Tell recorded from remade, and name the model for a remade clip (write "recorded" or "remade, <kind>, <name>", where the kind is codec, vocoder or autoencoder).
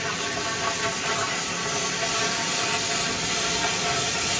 recorded